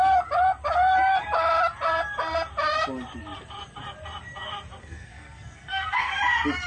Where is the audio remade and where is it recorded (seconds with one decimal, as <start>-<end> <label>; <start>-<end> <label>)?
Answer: 0.0-4.8 recorded; 4.8-6.2 remade; 6.2-6.7 recorded